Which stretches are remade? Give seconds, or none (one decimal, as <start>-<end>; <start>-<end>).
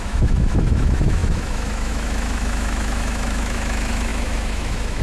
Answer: 0.0-5.0